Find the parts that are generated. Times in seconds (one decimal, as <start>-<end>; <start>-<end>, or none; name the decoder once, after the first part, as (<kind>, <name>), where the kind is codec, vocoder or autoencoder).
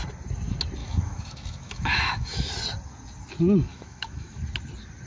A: 0.8-2.5 (autoencoder, DAC-VAE); 3.7-4.4